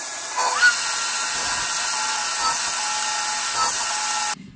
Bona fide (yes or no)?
yes